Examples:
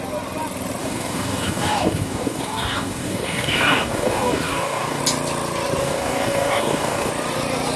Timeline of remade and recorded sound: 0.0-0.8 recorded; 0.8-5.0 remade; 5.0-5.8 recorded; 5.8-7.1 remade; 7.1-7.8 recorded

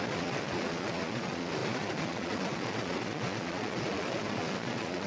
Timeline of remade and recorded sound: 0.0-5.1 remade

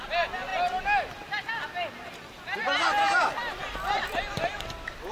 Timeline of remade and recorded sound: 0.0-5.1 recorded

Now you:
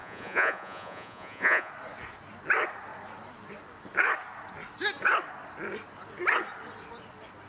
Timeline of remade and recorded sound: 0.0-1.7 remade; 1.7-7.5 recorded